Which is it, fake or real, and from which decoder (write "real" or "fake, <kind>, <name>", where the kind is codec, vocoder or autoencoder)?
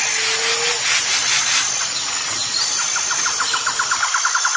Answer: real